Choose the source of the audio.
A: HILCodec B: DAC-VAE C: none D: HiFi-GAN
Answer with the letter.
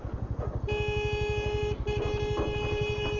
C